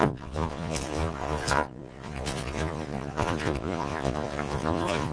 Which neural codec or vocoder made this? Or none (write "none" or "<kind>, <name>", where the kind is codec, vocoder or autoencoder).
vocoder, Vocos